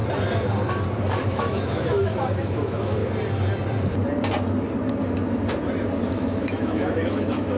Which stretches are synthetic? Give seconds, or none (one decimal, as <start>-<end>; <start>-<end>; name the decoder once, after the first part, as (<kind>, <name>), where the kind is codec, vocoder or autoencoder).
1.2-3.0 (autoencoder, DAC-VAE); 6.1-7.6